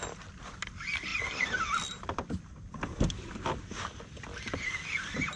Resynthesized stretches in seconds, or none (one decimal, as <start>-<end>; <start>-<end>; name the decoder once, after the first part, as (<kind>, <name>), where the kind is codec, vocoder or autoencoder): none